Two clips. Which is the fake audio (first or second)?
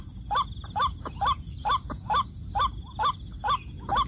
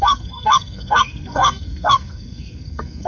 second